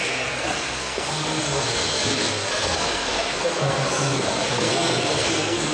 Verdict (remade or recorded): remade